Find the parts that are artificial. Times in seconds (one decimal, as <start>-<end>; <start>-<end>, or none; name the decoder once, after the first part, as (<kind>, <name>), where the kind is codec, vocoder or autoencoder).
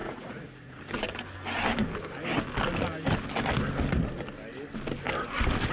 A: 0.0-0.8 (vocoder, Vocos)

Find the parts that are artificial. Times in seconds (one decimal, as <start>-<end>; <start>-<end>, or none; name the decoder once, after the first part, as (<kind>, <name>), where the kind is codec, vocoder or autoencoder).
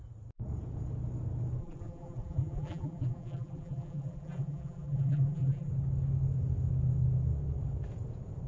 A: 1.6-5.7 (vocoder, BigVGAN v2)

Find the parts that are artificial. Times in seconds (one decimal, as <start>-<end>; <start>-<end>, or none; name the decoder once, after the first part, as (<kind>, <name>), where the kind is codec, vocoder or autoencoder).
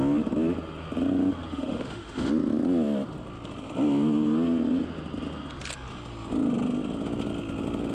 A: 1.5-2.3 (autoencoder, DAC-VAE)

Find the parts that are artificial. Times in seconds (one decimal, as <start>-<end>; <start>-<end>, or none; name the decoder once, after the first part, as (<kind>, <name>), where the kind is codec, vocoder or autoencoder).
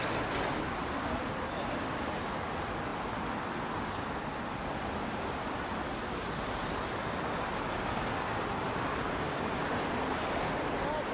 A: none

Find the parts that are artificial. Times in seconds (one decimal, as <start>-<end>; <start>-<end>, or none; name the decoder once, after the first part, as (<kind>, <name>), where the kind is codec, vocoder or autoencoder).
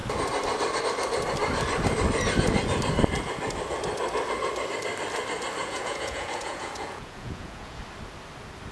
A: 5.6-7.8 (vocoder, Vocos)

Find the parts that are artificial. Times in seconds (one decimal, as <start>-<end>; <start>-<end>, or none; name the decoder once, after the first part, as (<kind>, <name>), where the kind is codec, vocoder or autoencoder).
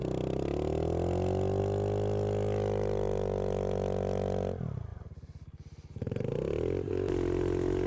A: none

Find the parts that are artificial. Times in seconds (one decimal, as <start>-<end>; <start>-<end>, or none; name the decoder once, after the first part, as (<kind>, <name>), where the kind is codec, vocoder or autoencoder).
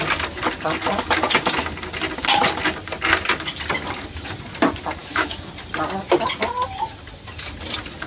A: 5.0-5.5 (autoencoder, DAC-VAE)